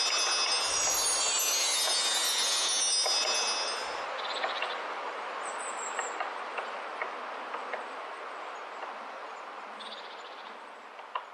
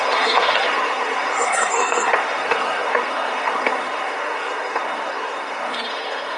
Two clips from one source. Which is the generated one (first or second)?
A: second